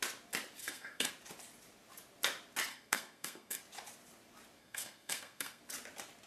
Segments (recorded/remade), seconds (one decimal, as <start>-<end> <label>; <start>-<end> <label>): 0.0-0.6 recorded; 0.6-1.1 remade; 1.1-2.7 recorded; 2.7-3.6 remade; 3.6-4.6 recorded; 4.6-5.6 remade; 5.6-6.3 recorded